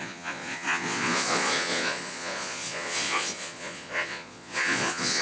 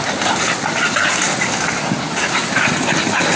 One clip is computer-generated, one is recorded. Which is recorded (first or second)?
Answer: second